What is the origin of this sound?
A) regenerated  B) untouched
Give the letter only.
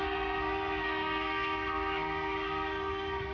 A